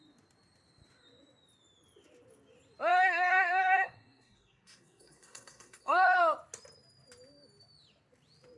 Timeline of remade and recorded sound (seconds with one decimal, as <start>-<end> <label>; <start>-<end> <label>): 0.0-2.9 recorded; 2.9-6.2 remade; 6.2-8.6 recorded